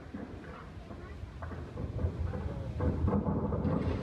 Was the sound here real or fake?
real